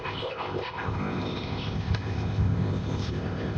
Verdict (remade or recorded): remade